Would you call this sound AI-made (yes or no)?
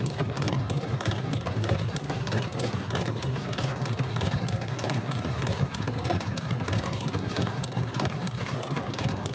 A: yes